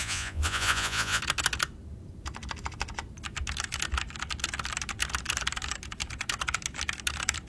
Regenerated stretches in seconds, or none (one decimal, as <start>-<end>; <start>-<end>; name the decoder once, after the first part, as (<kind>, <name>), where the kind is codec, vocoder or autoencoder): 0.0-1.2 (vocoder, Vocos)